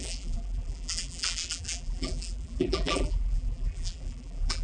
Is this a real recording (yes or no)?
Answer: no